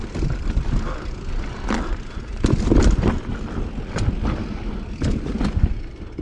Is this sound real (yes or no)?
yes